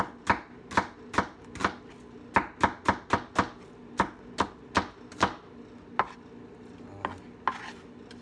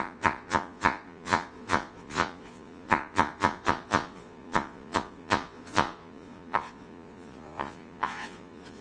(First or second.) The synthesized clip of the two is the second